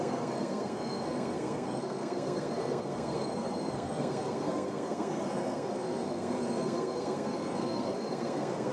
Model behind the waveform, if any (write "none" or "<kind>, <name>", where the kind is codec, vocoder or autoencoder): codec, SNAC